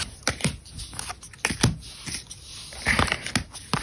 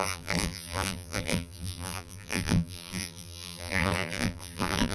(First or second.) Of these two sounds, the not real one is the second